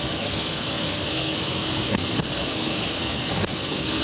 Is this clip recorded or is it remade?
remade